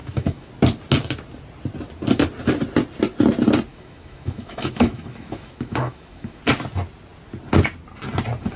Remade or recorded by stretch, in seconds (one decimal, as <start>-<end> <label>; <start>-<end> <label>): 0.0-0.5 remade; 0.5-3.7 recorded; 3.7-6.4 remade; 6.4-8.6 recorded